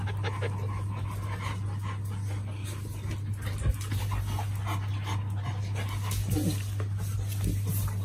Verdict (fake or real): real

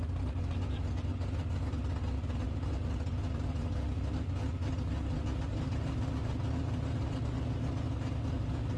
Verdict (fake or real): real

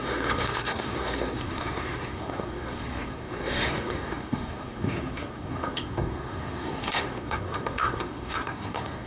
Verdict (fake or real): fake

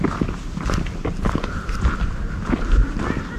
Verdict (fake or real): real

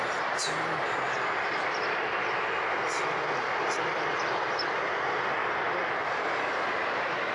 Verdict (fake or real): real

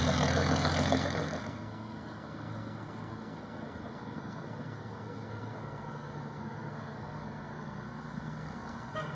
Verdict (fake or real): fake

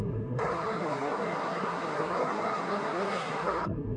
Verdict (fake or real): fake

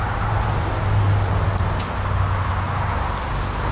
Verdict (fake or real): real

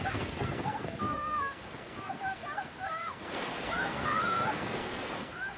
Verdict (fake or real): fake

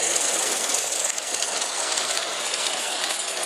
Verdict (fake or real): fake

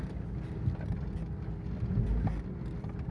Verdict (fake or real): real